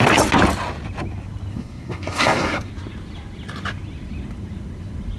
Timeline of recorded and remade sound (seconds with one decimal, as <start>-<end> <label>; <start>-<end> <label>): 0.0-1.5 recorded; 1.5-2.7 remade; 2.7-5.2 recorded

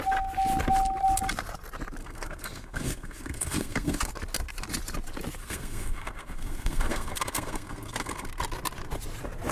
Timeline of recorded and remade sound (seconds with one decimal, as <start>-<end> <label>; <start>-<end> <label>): 0.0-2.0 recorded; 2.0-4.1 remade; 4.1-5.4 recorded; 5.4-8.3 remade; 8.3-9.5 recorded

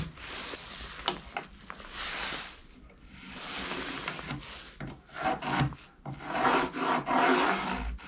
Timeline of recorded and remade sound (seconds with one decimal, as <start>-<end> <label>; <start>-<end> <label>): 0.0-8.1 recorded

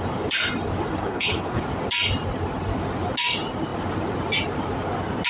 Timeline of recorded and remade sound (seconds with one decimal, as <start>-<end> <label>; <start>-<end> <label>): 0.0-1.0 recorded; 1.0-1.6 remade; 1.6-5.3 recorded